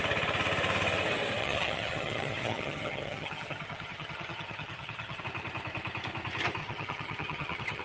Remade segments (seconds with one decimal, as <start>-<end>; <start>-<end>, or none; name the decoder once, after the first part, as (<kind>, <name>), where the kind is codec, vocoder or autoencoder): 1.4-5.2 (vocoder, HiFi-GAN); 6.6-7.8